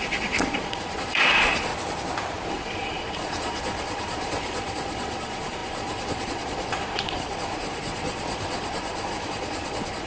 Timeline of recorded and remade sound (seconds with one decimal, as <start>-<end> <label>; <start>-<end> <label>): 0.0-1.7 remade; 1.7-2.5 recorded; 2.5-10.1 remade